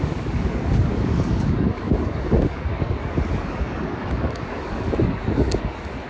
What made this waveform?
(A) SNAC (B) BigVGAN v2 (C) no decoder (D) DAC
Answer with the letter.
D